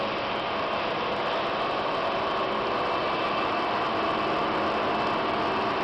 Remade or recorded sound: recorded